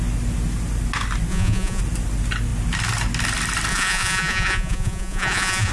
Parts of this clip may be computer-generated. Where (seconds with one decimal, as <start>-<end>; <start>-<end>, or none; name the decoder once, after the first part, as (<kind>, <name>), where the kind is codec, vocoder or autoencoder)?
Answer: 1.3-1.8 (vocoder, Vocos); 3.7-5.7

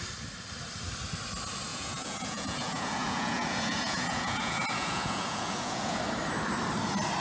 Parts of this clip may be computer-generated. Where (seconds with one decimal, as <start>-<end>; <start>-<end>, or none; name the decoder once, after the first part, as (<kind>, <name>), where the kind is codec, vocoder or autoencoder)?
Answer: 1.7-6.0 (vocoder, Vocos)

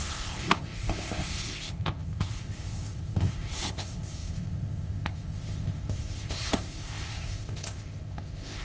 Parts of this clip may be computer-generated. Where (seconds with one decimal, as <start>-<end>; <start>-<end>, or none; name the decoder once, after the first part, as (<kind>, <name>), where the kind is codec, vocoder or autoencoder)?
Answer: 0.0-8.6 (codec, ZipCodec)

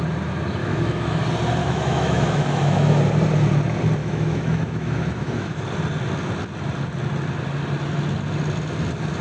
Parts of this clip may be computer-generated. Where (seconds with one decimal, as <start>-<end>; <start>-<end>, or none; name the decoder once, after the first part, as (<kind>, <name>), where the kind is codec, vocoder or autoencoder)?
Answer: 0.6-1.2 (autoencoder, DAC-VAE); 1.6-3.0; 4.0-5.6